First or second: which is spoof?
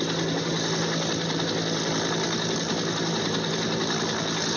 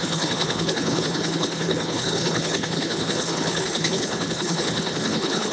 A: second